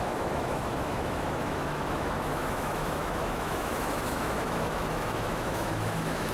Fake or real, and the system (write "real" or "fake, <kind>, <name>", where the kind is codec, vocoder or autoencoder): fake, autoencoder, DAC-VAE